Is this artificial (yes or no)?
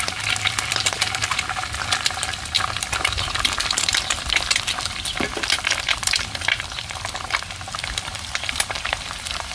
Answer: yes